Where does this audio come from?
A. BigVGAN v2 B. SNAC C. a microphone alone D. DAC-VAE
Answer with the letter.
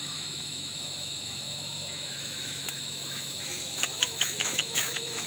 D